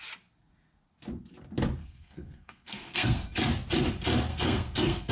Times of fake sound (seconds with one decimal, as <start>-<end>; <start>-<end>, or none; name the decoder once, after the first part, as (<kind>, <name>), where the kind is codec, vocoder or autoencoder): 1.8-3.5 (codec, SNAC); 4.3-5.1